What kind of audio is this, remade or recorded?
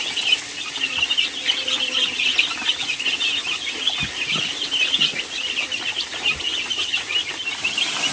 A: recorded